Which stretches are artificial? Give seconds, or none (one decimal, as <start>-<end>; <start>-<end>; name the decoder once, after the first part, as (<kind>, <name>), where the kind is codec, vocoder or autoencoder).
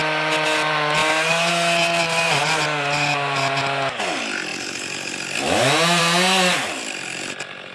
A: none